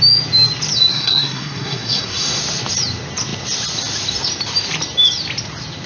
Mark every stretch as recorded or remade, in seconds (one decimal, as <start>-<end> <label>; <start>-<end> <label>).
0.0-0.9 recorded; 0.9-2.4 remade; 2.4-5.9 recorded